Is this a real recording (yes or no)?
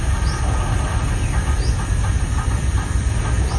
yes